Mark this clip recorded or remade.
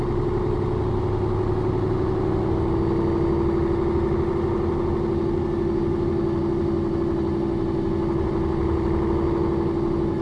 recorded